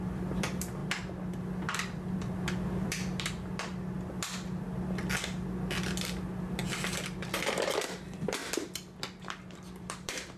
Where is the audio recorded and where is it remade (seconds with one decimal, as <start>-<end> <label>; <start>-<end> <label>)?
0.0-0.8 remade; 0.8-1.4 recorded; 1.4-8.4 remade; 8.4-9.4 recorded; 9.4-10.4 remade